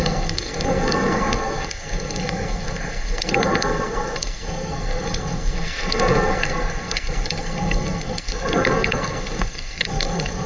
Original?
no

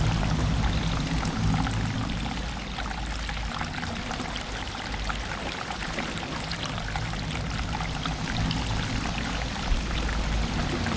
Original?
yes